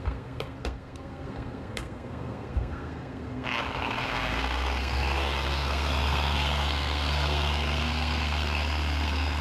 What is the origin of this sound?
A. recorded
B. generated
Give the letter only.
B